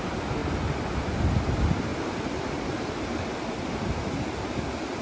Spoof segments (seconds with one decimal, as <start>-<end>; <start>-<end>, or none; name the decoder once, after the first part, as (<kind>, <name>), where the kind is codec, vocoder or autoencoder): none